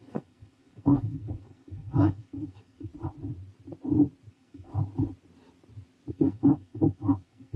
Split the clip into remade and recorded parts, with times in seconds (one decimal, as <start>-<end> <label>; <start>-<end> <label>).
0.0-2.9 remade; 2.9-4.3 recorded; 4.3-4.7 remade; 4.7-6.1 recorded; 6.1-7.6 remade

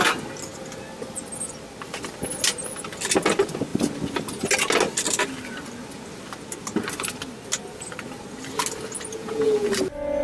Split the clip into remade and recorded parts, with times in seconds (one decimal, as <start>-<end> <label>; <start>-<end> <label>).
0.0-9.1 recorded; 9.1-9.7 remade; 9.7-10.2 recorded